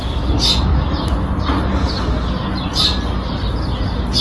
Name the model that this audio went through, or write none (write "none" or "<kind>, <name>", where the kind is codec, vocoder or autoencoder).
none